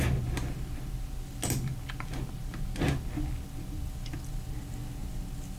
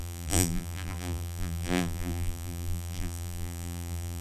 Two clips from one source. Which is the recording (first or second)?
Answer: first